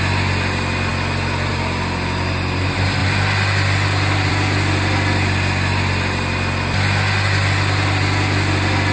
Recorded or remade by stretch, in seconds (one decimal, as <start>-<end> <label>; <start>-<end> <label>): 0.0-8.9 recorded